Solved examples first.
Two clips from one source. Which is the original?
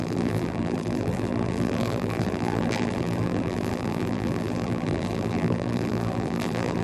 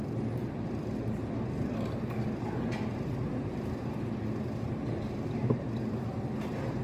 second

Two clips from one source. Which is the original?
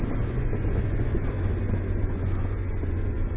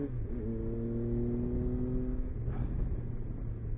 second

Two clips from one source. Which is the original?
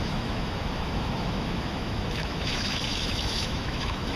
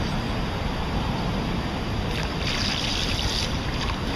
second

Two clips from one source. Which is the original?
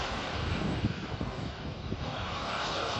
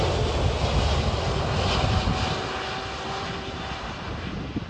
second